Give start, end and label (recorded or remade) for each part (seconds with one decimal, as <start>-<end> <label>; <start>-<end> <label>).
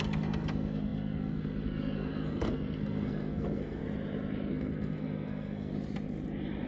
0.0-3.8 remade; 3.8-4.5 recorded; 4.5-5.7 remade; 5.7-6.7 recorded